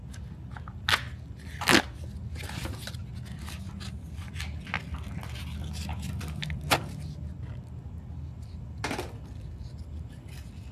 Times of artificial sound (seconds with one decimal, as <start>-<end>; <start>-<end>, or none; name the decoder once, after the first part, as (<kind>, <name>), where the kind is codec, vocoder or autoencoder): none